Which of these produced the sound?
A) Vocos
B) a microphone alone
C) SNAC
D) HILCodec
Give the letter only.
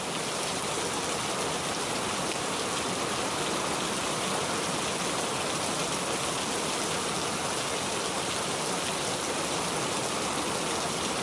B